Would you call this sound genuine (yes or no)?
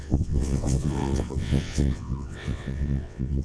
no